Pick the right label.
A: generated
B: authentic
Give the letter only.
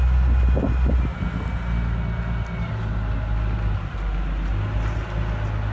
B